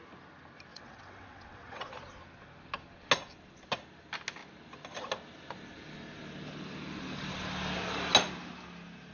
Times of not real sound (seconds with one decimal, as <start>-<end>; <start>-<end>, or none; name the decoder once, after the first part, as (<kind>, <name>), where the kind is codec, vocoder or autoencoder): 0.7-1.9 (vocoder, WaveNeXt)